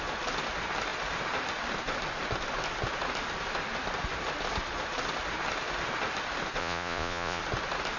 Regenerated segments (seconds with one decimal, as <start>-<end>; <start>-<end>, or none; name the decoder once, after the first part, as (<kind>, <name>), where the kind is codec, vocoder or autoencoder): 6.6-7.4 (vocoder, Vocos)